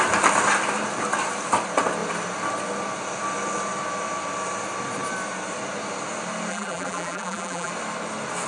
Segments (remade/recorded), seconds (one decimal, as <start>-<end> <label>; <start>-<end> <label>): 0.0-6.5 recorded; 6.5-7.7 remade; 7.7-8.5 recorded